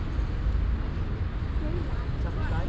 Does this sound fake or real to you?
real